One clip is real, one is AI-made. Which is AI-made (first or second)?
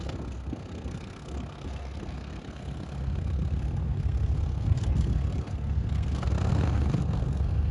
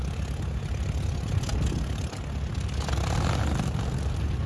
first